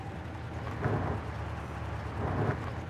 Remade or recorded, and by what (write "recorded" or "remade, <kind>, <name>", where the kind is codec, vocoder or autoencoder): recorded